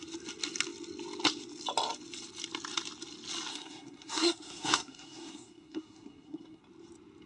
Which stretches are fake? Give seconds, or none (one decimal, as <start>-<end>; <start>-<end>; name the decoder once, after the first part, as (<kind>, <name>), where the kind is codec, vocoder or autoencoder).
3.5-6.6 (codec, SNAC)